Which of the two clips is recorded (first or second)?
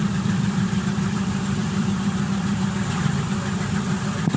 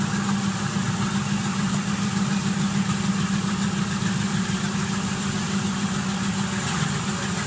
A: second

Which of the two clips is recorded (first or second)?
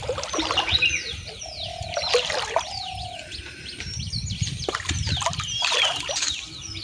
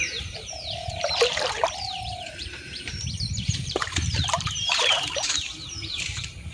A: first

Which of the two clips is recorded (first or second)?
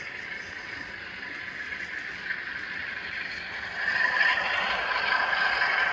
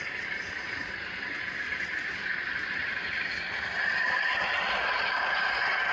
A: first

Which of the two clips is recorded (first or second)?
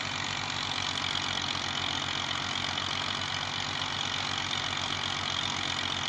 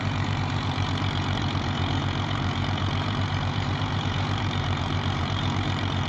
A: first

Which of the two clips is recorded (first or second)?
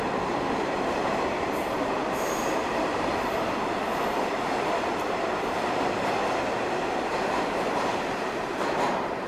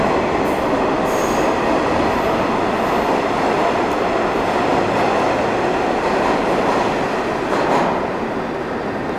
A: second